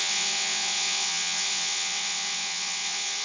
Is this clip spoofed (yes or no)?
yes